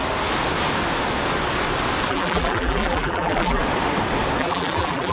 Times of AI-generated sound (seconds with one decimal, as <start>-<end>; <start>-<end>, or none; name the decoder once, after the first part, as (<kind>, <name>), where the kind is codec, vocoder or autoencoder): 2.1-3.6 (vocoder, BigVGAN v2); 4.4-5.1